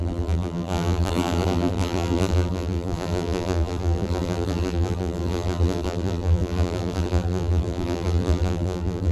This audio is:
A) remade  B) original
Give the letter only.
A